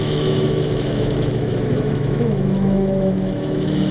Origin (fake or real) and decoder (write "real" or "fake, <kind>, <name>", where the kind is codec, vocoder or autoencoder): fake, autoencoder, DAC-VAE